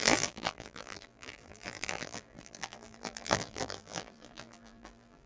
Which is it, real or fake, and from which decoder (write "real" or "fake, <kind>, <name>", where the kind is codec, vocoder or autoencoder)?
fake, vocoder, BigVGAN v2